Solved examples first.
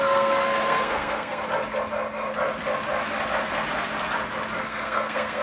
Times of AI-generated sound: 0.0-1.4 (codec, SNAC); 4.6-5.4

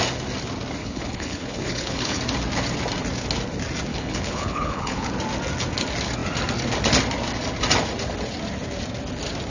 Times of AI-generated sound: 0.8-2.2 (codec, HILCodec); 3.9-5.1

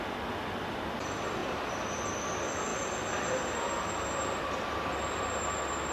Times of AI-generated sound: 1.4-2.0 (vocoder, BigVGAN v2); 2.7-4.6

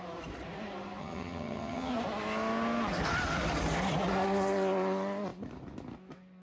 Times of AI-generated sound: 1.0-1.9 (vocoder, HiFi-GAN)

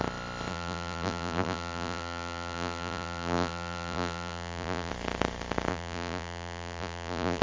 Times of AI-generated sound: 0.5-4.9 (vocoder, BigVGAN v2); 5.7-7.4